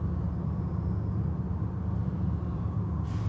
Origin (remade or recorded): recorded